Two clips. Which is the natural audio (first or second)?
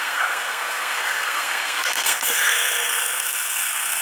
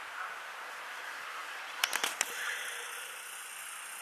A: second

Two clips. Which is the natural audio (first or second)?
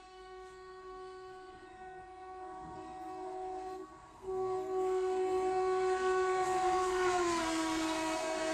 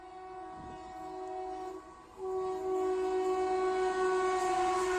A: second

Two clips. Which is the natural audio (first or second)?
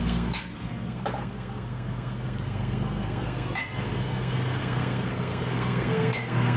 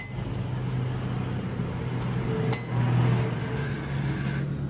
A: second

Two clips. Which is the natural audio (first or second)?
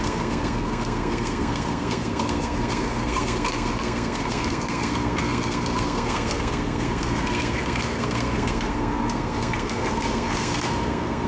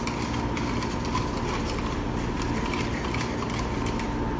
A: second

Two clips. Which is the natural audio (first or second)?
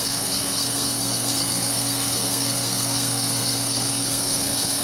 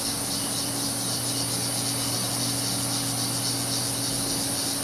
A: second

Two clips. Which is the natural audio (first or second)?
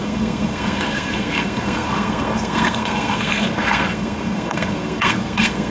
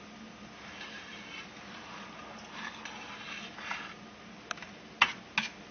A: second